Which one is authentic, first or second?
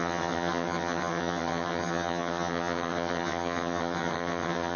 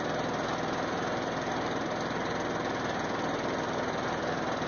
second